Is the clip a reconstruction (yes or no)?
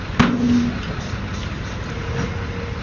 no